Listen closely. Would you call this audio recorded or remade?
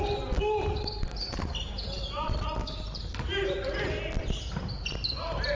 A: recorded